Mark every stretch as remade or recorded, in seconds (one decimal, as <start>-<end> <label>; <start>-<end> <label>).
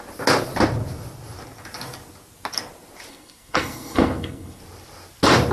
0.0-3.1 recorded; 3.1-4.6 remade; 4.6-5.5 recorded